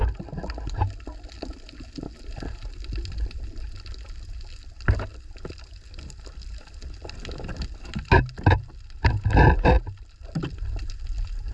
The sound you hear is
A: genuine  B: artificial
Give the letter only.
A